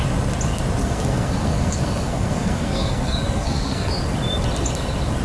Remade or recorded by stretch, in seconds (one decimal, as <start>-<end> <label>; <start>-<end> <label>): 0.0-0.8 recorded; 0.8-3.9 remade; 3.9-5.2 recorded

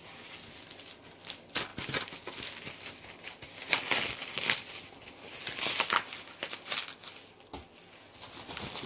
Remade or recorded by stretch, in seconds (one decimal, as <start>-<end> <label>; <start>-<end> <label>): 0.0-8.9 recorded